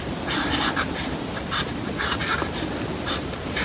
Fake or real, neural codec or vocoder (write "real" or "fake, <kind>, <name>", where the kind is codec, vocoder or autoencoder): fake, vocoder, BigVGAN v2